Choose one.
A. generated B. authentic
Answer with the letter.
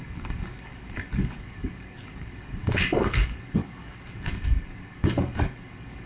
A